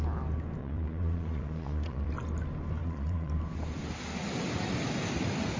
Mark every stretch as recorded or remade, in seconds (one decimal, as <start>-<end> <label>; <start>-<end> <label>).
0.0-0.6 recorded; 0.6-2.1 remade; 2.1-2.8 recorded; 2.8-3.3 remade; 3.3-5.6 recorded